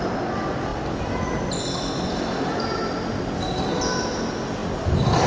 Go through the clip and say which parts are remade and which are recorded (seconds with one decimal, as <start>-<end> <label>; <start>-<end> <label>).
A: 0.0-5.3 recorded